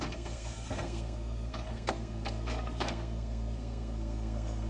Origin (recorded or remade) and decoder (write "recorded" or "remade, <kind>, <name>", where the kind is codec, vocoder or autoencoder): remade, codec, SNAC